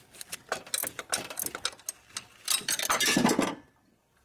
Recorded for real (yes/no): yes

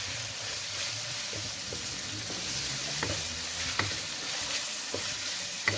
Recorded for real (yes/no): no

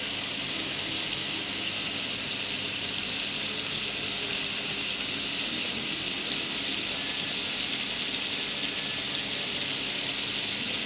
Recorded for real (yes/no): yes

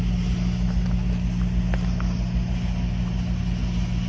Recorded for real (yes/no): yes